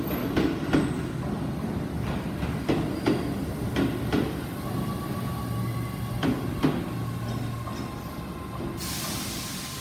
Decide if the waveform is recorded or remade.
recorded